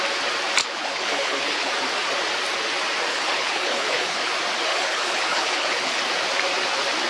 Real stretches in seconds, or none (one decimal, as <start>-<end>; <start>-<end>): 0.0-0.6; 1.7-3.1; 4.3-4.7; 6.0-7.1